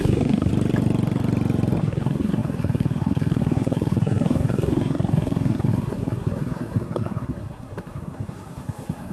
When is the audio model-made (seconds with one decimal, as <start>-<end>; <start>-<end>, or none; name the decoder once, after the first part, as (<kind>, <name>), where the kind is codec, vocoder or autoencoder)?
0.0-0.5 (codec, SNAC); 1.8-9.1